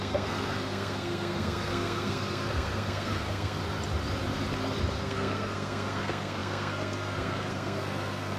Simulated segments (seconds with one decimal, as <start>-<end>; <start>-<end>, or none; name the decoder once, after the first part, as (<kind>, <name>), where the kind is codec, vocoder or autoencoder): 0.0-3.6 (codec, SNAC); 5.0-8.4